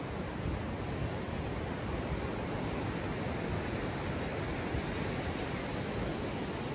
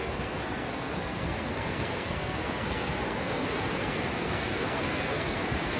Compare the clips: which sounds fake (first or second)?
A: second